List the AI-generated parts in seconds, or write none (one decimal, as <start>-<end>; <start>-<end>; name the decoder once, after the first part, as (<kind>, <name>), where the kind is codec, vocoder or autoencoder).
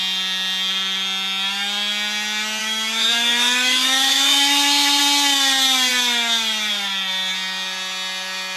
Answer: 2.6-5.0 (autoencoder, DAC-VAE)